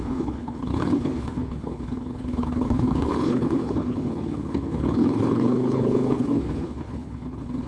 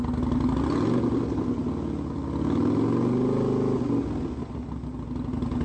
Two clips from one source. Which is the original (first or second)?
second